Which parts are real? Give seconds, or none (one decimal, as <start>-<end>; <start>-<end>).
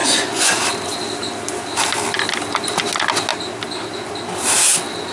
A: 0.6-5.1